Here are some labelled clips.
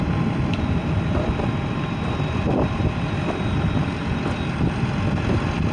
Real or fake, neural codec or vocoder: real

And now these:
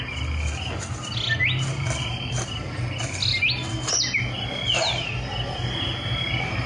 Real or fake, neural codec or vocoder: real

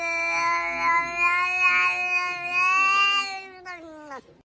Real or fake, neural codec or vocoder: real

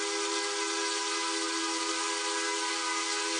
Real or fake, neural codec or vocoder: real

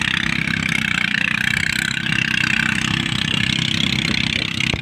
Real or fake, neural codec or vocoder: real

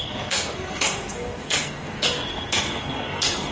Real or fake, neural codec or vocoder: fake, codec, SNAC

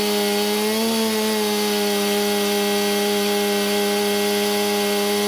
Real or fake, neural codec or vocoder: real